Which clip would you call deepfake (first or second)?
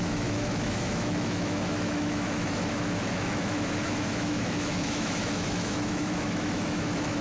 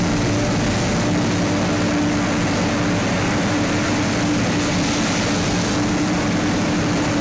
first